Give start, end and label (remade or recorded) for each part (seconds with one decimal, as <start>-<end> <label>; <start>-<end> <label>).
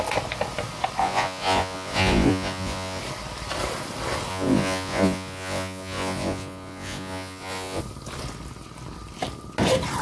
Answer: 0.0-1.0 recorded; 1.0-3.0 remade; 3.0-4.3 recorded; 4.3-7.8 remade; 7.8-10.0 recorded